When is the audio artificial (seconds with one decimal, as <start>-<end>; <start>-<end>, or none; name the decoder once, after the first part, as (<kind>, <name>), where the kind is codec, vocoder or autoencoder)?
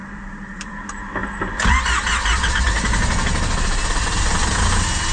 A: 0.0-0.7 (vocoder, BigVGAN v2)